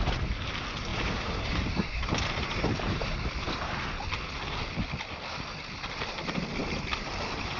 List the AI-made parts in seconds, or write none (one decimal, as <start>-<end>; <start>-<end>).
0.9-3.3; 6.6-7.1